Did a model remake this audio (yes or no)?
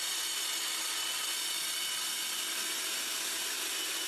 no